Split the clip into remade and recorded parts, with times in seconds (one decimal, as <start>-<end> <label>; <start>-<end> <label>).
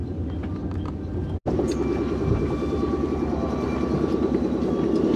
0.0-5.2 recorded